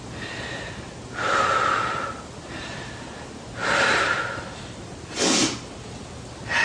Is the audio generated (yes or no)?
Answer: no